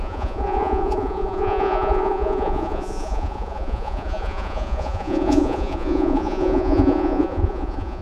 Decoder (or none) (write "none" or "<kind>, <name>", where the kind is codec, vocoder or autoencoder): vocoder, Vocos